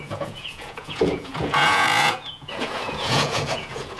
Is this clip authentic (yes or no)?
no